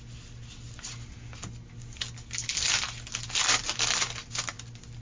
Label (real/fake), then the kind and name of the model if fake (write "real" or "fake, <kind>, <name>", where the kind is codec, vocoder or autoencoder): real